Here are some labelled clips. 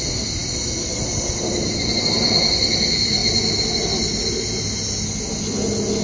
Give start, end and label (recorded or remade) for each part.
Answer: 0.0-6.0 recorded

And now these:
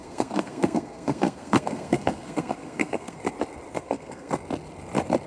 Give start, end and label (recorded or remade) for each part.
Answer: 0.0-3.2 remade; 3.2-3.7 recorded; 3.7-4.3 remade; 4.3-5.3 recorded